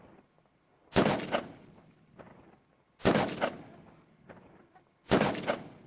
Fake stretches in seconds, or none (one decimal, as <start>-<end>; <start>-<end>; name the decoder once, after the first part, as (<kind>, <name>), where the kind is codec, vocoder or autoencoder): 0.0-0.8 (vocoder, BigVGAN v2); 1.5-2.3